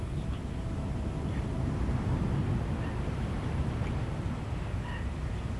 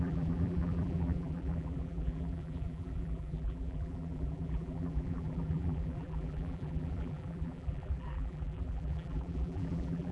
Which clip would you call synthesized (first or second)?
second